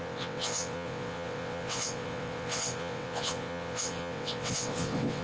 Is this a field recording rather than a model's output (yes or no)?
no